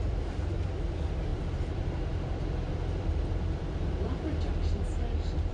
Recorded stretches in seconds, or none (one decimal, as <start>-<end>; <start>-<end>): none